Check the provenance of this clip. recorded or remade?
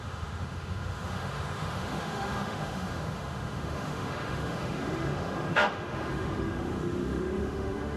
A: remade